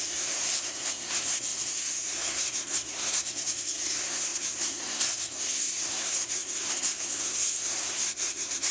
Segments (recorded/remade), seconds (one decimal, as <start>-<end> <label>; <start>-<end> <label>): 0.0-8.7 remade